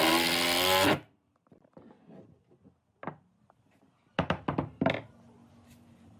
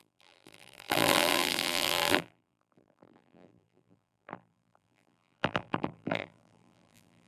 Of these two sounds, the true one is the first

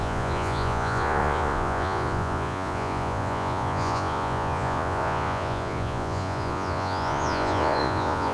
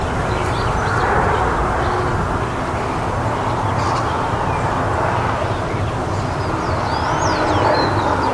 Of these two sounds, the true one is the second